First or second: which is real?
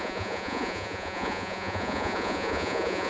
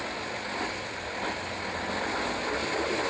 second